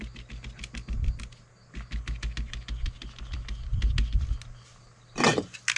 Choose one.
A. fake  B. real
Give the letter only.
B